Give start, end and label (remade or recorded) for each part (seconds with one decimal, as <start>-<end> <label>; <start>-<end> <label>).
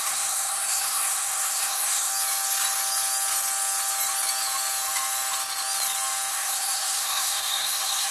0.0-2.1 remade; 2.1-6.3 recorded; 6.3-8.1 remade